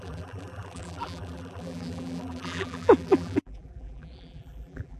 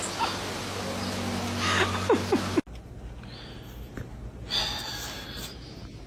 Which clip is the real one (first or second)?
second